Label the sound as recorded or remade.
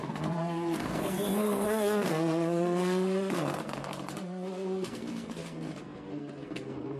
remade